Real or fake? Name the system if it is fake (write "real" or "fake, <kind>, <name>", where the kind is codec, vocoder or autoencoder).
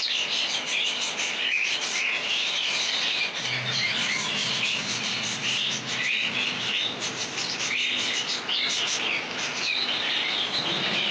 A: real